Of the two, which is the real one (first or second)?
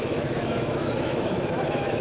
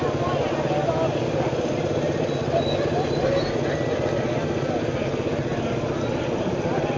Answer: second